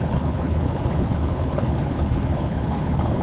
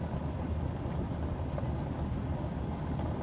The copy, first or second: first